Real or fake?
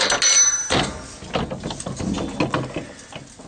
real